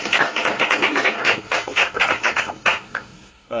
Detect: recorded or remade remade